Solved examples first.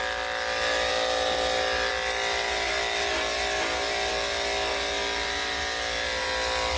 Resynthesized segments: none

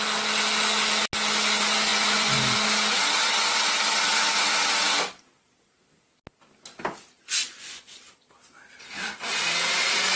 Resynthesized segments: 1.9-2.4 (vocoder, Vocos); 7.4-8.0

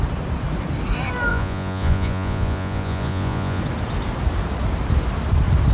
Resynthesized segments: 1.3-3.6 (vocoder, Vocos)

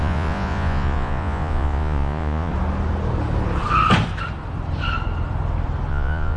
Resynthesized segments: 0.0-2.5 (vocoder, Vocos); 5.9-6.4

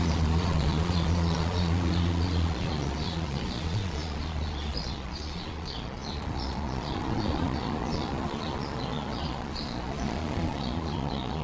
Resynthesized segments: 0.0-11.4 (vocoder, Vocos)

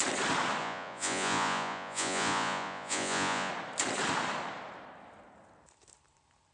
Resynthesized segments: 0.6-3.5 (vocoder, Vocos)

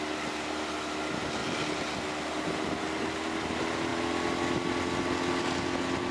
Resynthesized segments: none